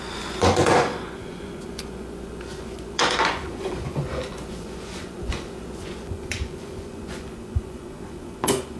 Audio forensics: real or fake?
fake